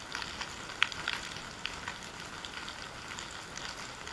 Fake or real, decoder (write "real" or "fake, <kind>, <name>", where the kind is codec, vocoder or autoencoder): real